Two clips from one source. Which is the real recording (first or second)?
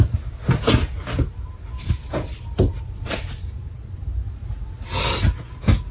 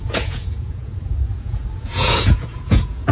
first